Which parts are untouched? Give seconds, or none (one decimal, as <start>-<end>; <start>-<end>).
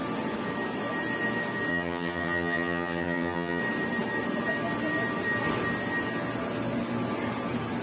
0.0-1.7; 3.6-7.8